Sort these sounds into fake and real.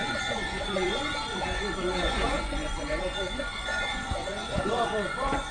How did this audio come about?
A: fake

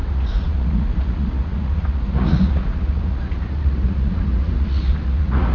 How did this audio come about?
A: fake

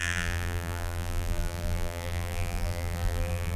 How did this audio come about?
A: fake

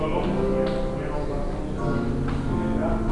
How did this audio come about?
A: real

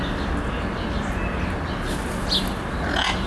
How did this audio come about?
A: real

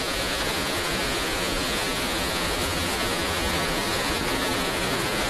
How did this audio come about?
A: fake